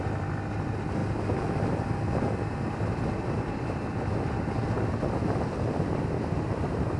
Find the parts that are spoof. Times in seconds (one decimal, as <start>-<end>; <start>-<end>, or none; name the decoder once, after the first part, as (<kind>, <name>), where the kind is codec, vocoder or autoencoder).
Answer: none